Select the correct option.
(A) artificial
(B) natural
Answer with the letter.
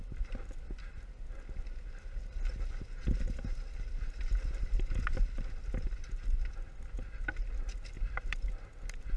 B